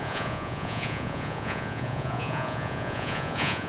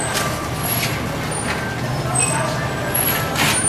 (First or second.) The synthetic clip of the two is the first